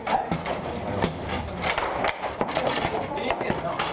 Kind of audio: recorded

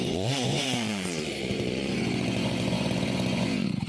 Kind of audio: remade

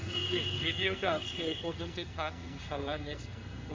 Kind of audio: remade